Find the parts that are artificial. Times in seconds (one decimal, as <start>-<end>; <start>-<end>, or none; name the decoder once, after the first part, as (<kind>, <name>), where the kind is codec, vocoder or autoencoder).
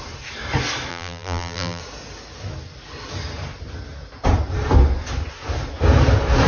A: 0.9-1.8 (vocoder, BigVGAN v2)